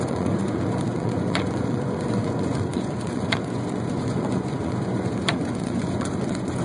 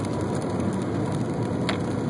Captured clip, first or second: second